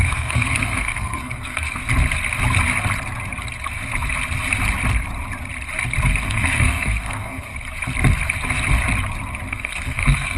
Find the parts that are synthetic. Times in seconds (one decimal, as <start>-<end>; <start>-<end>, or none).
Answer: 0.0-1.8; 6.2-7.5; 9.5-10.4

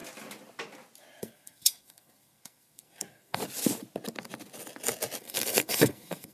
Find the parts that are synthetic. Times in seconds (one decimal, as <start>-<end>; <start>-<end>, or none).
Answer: 1.2-3.4; 5.2-6.3

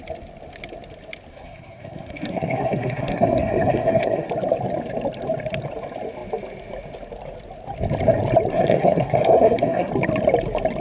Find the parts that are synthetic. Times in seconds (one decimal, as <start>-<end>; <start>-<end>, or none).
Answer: 1.3-4.3; 8.5-9.9

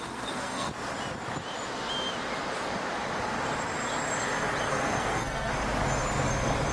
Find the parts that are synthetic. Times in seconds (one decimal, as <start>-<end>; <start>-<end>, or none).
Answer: 0.0-0.7; 4.7-5.5

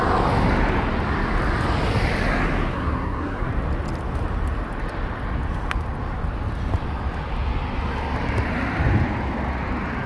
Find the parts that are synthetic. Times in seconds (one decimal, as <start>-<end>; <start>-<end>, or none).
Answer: 2.7-3.5

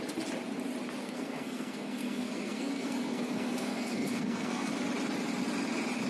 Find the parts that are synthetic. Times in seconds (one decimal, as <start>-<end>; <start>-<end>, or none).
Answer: 1.0-4.7